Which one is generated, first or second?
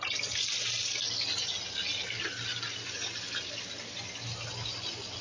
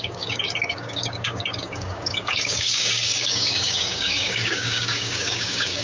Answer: second